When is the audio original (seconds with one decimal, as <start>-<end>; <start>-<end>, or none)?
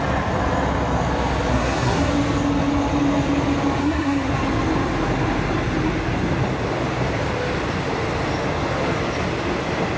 0.0-1.5; 2.1-3.8; 4.3-10.0